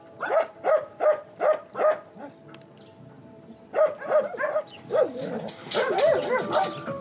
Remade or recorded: recorded